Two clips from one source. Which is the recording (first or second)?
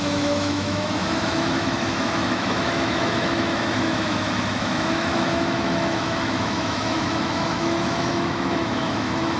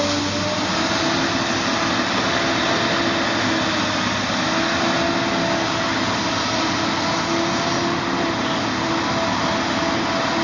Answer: second